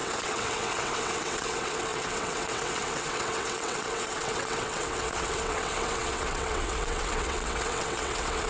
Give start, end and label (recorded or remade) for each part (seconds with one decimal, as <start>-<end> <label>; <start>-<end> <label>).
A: 0.0-8.5 remade